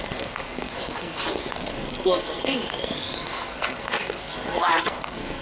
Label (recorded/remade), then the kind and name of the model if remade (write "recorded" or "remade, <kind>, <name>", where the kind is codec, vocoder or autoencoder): remade, codec, SNAC